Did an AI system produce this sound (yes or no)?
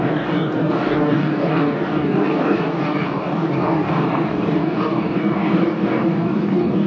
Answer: yes